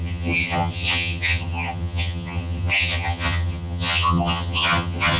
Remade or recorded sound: remade